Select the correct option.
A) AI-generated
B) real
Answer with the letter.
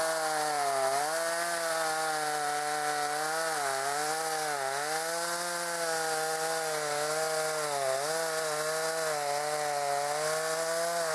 B